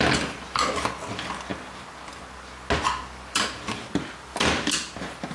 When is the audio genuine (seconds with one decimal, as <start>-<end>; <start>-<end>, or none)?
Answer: 0.0-5.3